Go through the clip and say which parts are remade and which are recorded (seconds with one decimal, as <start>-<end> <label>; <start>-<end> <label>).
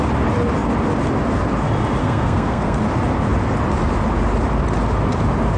0.0-2.0 recorded; 2.0-2.8 remade; 2.8-5.6 recorded